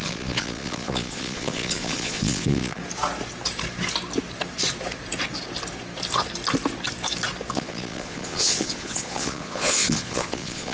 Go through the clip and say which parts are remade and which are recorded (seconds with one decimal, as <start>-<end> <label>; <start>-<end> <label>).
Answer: 0.0-2.8 remade; 2.8-7.5 recorded; 7.5-10.7 remade